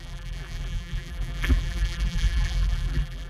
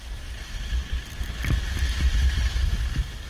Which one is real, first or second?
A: second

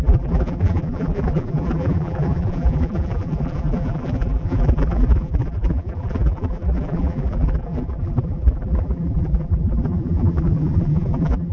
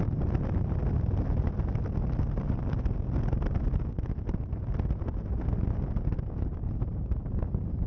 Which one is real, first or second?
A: second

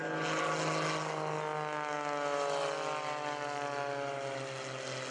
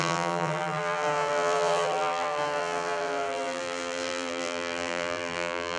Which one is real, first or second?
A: first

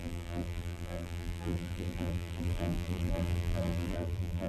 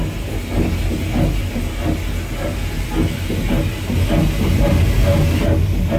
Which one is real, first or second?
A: second